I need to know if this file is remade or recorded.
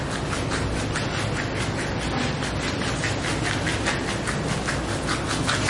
recorded